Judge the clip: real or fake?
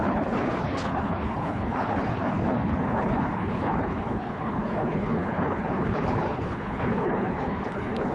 fake